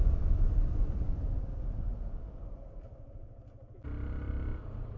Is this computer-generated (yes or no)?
no